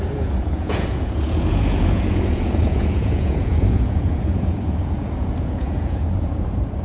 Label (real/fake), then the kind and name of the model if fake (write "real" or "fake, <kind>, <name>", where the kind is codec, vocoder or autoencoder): fake, vocoder, Vocos